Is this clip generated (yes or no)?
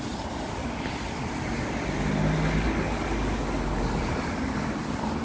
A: no